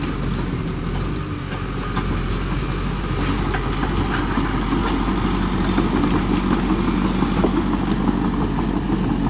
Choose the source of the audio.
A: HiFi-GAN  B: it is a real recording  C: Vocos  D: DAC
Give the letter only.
B